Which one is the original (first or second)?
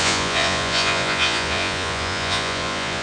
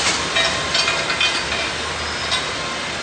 second